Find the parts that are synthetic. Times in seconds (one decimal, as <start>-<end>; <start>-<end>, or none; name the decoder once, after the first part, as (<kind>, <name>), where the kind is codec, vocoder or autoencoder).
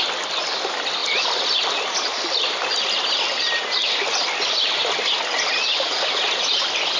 1.0-3.4 (vocoder, BigVGAN v2); 3.8-6.0